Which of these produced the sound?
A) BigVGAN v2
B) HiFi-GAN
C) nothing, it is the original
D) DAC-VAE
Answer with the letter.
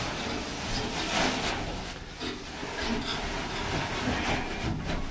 C